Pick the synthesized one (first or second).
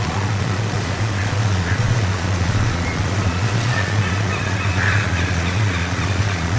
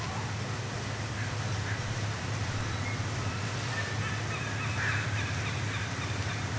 first